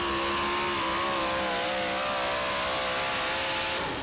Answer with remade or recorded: recorded